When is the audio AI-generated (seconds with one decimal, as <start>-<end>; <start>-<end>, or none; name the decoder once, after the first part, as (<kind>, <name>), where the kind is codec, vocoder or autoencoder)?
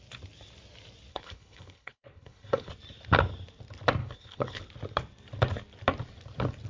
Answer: 1.1-2.7 (codec, HILCodec); 4.0-4.6